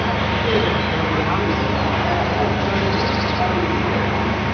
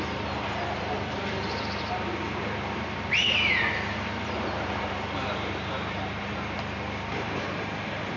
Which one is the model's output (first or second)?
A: second